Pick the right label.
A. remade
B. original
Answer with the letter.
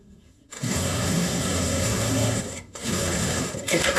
A